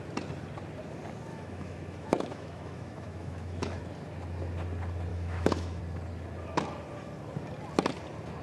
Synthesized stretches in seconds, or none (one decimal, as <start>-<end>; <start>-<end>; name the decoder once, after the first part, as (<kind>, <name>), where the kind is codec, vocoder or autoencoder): 1.3-3.8 (autoencoder, DAC-VAE); 5.1-5.8